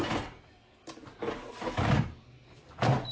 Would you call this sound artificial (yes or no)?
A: no